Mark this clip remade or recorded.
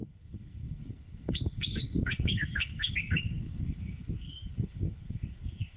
remade